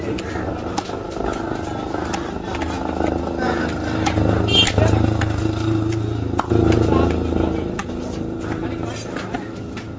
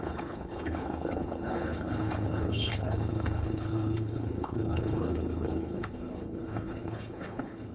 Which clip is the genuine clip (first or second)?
first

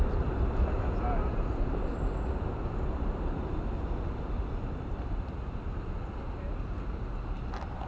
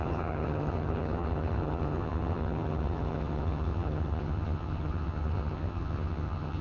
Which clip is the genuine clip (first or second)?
first